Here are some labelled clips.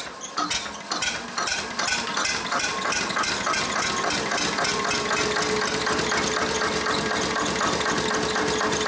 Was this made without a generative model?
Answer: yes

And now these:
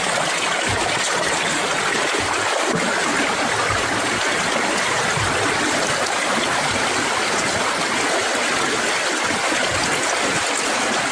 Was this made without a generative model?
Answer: yes